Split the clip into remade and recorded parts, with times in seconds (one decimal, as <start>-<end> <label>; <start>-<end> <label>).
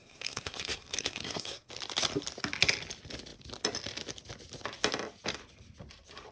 0.0-1.7 remade; 1.7-6.3 recorded